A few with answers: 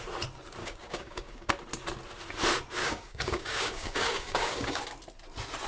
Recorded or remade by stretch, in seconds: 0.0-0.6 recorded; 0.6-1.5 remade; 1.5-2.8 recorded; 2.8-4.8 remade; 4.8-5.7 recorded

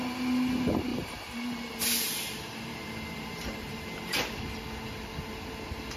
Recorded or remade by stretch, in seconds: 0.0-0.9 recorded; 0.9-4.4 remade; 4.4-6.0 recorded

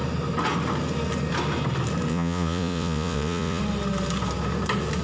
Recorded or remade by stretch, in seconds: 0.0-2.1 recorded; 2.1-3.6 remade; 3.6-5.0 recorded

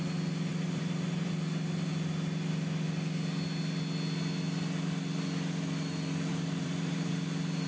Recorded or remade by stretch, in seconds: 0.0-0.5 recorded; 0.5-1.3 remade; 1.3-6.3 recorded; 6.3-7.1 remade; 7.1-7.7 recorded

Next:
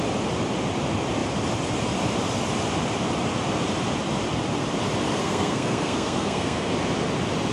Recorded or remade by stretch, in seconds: 0.0-5.2 recorded; 5.2-6.7 remade; 6.7-7.5 recorded